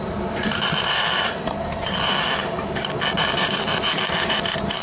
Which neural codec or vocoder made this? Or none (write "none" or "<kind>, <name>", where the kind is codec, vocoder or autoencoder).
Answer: vocoder, BigVGAN v2